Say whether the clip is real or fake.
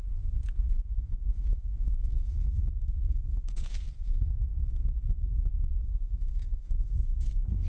fake